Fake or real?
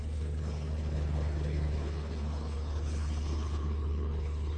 fake